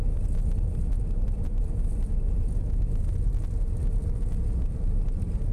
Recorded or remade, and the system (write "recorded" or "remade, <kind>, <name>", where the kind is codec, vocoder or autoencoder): recorded